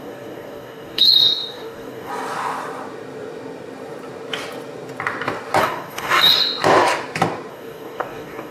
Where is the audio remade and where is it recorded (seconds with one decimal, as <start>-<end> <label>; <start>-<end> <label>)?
0.0-2.1 remade; 2.1-5.6 recorded; 5.6-6.4 remade; 6.4-7.5 recorded; 7.5-8.5 remade

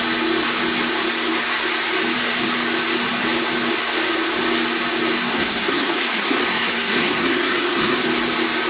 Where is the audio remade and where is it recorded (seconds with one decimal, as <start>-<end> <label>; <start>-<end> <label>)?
0.0-5.3 recorded; 5.3-8.0 remade; 8.0-8.7 recorded